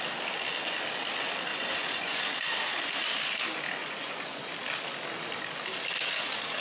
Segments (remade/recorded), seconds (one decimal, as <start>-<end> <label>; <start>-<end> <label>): 0.0-1.5 recorded; 1.5-2.2 remade; 2.2-3.8 recorded; 3.8-4.5 remade; 4.5-6.6 recorded